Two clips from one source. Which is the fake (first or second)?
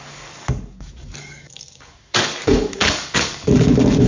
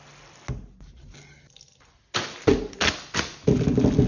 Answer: first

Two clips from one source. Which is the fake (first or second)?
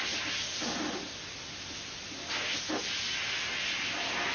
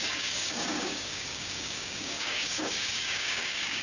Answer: second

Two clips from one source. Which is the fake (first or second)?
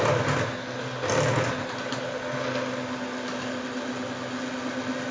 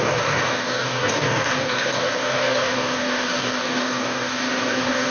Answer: second